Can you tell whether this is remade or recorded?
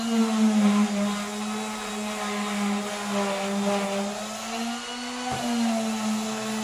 recorded